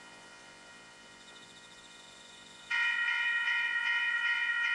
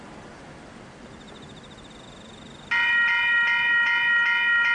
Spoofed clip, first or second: first